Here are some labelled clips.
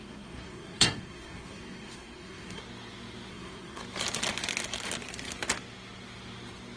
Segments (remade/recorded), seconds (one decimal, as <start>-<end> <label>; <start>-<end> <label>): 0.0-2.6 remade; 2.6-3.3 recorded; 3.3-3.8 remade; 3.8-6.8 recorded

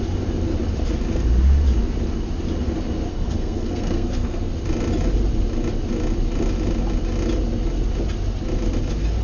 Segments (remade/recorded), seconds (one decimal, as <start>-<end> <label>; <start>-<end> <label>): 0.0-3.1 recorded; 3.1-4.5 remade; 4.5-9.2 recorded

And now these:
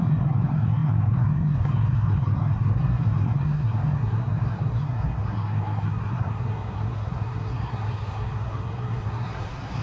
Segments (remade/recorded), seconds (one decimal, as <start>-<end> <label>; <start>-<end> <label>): 0.0-9.8 remade

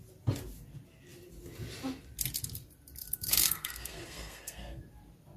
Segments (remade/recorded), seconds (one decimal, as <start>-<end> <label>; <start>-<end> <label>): 0.0-3.0 recorded; 3.0-4.8 remade; 4.8-5.4 recorded

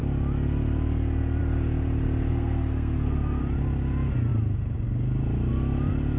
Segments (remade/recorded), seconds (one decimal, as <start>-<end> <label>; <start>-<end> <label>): 0.0-2.3 recorded; 2.3-3.4 remade; 3.4-6.2 recorded

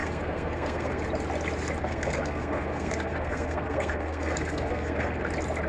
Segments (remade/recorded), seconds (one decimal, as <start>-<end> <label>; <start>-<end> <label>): 0.0-1.0 remade; 1.0-1.8 recorded; 1.8-5.2 remade; 5.2-5.7 recorded